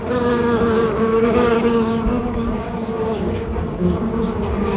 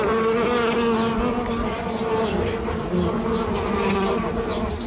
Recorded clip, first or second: second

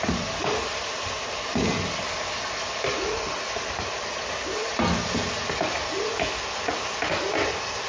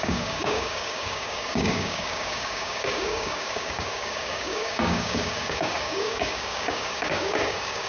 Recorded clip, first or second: first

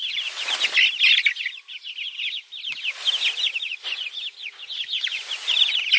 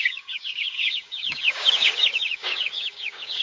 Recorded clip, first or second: first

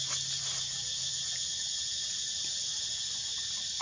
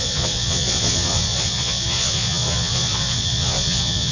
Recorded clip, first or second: first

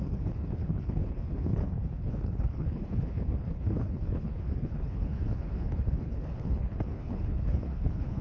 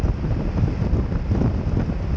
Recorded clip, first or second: second